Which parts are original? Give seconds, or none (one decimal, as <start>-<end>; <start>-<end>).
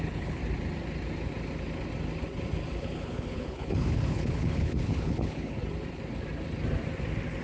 0.4-2.8; 5.6-7.4